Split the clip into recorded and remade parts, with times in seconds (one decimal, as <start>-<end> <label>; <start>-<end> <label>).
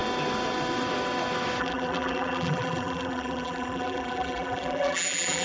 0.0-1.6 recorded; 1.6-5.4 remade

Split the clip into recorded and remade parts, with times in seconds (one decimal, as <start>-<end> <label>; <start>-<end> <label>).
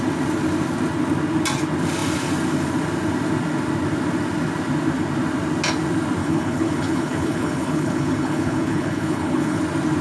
0.0-6.2 recorded; 6.2-9.6 remade; 9.6-10.0 recorded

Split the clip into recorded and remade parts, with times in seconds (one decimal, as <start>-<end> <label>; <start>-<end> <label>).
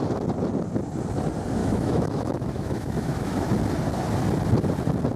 0.0-1.6 recorded; 1.6-3.5 remade; 3.5-5.2 recorded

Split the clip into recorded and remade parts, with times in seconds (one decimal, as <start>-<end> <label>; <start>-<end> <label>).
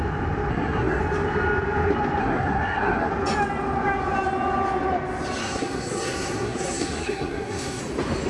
0.0-0.5 recorded; 0.5-1.0 remade; 1.0-2.2 recorded; 2.2-3.1 remade; 3.1-5.4 recorded; 5.4-7.8 remade; 7.8-8.3 recorded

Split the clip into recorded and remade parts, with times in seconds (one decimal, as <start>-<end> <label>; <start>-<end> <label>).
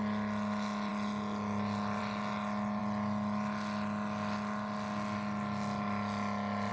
0.0-6.7 recorded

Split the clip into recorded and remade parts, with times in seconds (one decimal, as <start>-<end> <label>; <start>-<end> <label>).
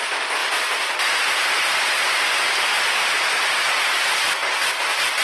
0.0-5.2 recorded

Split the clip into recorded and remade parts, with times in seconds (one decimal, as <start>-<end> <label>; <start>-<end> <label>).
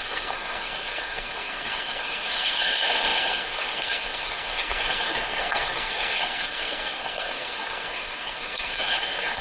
0.0-9.4 remade